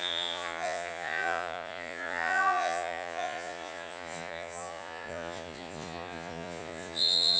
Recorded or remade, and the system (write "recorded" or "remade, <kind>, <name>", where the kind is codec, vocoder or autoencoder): remade, vocoder, Vocos